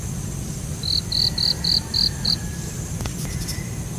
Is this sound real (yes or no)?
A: yes